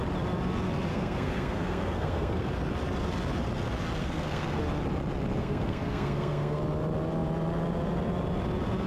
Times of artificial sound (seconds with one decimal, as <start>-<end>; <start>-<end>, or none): 0.9-2.5; 4.0-4.6; 5.4-6.6

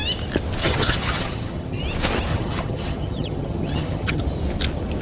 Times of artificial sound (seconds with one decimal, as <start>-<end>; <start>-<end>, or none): 0.6-1.8; 2.3-4.2

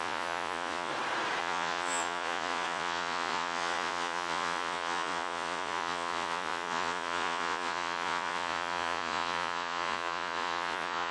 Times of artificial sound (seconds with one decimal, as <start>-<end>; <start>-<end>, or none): 0.0-0.9; 1.4-11.1

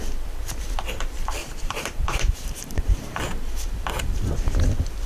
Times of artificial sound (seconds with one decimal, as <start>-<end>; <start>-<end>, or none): 1.4-3.2

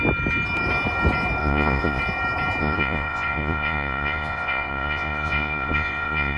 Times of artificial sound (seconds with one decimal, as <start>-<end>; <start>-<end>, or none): 1.4-2.0; 2.6-6.4

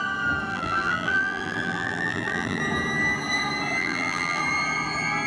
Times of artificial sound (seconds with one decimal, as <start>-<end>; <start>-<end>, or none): 0.5-2.6; 3.8-4.4

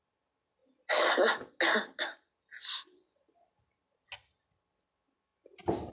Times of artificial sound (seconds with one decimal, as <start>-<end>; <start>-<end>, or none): none